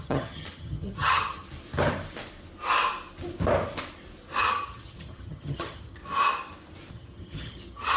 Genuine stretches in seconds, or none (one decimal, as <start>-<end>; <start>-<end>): 1.5-4.4; 6.0-6.9